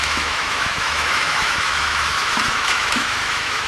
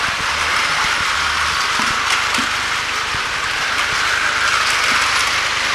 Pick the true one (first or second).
second